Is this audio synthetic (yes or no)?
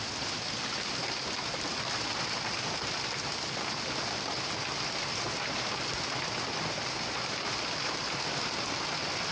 no